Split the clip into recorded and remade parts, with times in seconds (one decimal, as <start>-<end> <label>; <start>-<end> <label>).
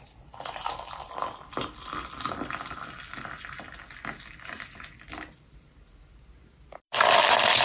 0.0-7.6 recorded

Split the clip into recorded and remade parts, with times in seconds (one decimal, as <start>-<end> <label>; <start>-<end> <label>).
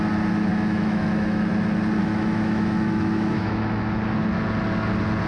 0.0-0.5 recorded; 0.5-1.5 remade; 1.5-2.0 recorded; 2.0-3.8 remade; 3.8-5.3 recorded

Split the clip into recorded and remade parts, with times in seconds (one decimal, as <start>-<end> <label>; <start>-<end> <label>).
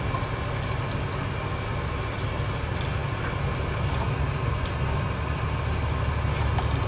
0.0-6.9 recorded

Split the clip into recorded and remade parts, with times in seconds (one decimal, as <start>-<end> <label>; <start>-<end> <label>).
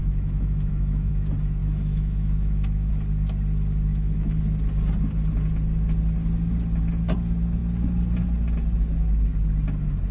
0.0-1.1 remade; 1.1-1.6 recorded; 1.6-2.9 remade; 2.9-3.9 recorded; 3.9-4.4 remade; 4.4-10.1 recorded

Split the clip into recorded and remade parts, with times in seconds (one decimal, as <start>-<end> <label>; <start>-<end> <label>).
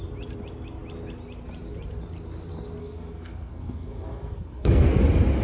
0.0-2.8 recorded; 2.8-5.0 remade; 5.0-5.4 recorded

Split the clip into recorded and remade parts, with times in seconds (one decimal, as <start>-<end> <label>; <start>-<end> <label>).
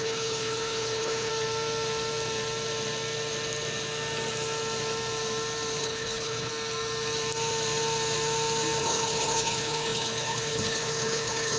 0.0-1.3 remade; 1.3-5.8 recorded; 5.8-6.5 remade; 6.5-8.8 recorded; 8.8-11.6 remade